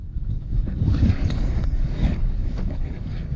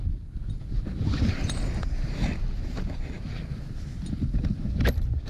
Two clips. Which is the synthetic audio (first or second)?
first